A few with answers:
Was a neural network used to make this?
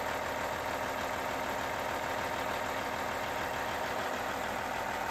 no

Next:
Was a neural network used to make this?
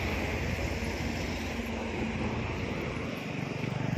no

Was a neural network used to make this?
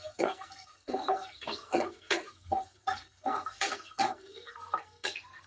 yes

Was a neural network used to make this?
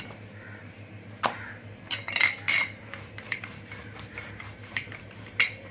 yes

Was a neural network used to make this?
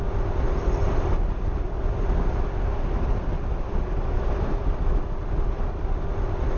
no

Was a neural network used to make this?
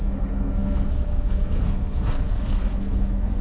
yes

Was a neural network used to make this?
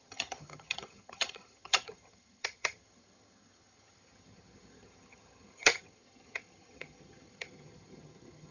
yes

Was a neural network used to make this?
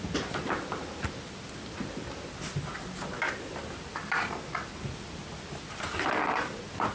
no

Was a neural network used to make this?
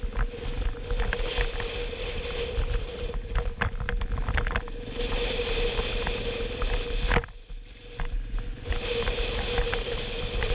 no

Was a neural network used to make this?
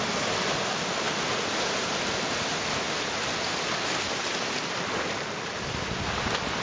no